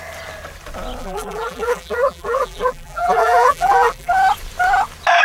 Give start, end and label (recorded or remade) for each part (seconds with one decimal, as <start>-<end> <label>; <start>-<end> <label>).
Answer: 0.0-1.0 recorded; 1.0-4.1 remade; 4.1-5.2 recorded